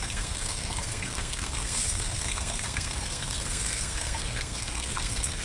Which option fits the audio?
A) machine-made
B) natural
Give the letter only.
A